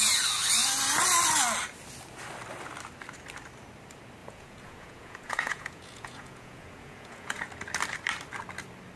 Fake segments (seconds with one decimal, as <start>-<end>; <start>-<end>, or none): 4.2-7.5